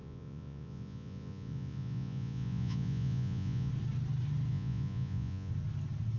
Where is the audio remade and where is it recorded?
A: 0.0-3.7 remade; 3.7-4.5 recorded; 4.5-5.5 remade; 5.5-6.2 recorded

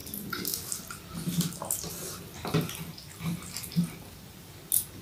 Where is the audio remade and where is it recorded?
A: 0.0-3.1 recorded; 3.1-3.8 remade; 3.8-5.0 recorded

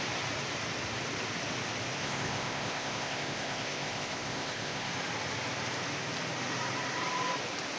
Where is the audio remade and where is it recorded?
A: 0.0-2.0 recorded; 2.0-4.9 remade; 4.9-7.8 recorded

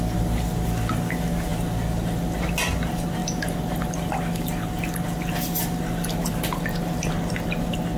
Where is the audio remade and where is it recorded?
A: 0.0-8.0 recorded

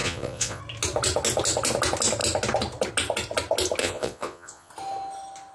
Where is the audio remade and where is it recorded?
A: 0.0-0.6 remade; 0.6-3.8 recorded; 3.8-4.7 remade; 4.7-5.5 recorded

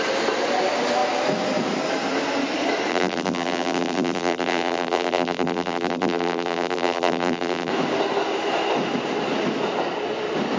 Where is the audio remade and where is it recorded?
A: 0.0-2.9 recorded; 2.9-7.7 remade; 7.7-10.6 recorded